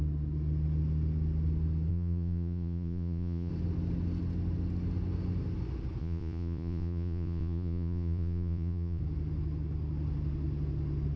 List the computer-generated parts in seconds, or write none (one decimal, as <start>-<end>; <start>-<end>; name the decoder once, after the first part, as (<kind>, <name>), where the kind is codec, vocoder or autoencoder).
1.9-3.5 (vocoder, Vocos); 6.0-9.0